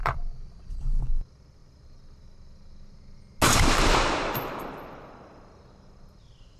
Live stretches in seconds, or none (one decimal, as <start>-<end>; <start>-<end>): 1.0-6.6